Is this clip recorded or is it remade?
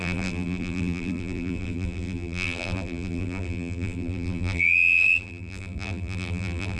remade